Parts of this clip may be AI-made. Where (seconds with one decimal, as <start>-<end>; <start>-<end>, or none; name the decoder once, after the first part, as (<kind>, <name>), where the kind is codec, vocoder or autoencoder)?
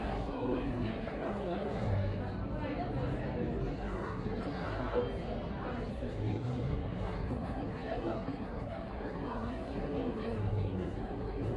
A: 0.0-2.2 (codec, SNAC); 3.7-5.0; 5.9-11.6